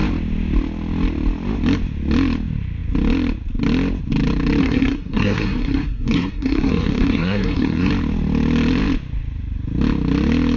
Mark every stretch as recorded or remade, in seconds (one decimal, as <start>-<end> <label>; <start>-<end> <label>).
0.0-4.6 recorded; 4.6-7.9 remade; 7.9-10.6 recorded